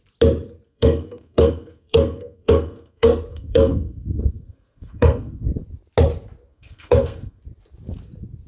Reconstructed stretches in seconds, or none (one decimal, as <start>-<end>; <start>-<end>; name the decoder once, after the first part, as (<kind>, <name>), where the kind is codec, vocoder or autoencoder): 0.7-5.5 (codec, SNAC); 6.5-7.4